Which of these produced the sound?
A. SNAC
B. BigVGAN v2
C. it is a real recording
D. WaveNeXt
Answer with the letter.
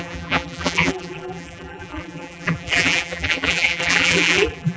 B